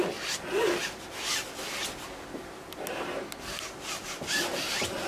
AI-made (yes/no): no